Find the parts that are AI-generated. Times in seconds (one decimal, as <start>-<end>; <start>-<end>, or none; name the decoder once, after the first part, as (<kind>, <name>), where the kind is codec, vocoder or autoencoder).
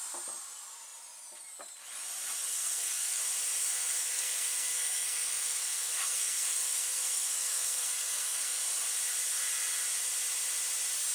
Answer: 2.5-3.2 (codec, SNAC); 3.6-8.6